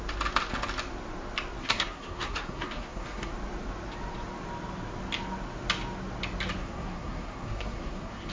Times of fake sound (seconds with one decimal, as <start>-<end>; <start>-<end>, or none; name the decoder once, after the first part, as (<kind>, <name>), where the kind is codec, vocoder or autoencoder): 1.6-3.3 (codec, SNAC); 6.6-8.3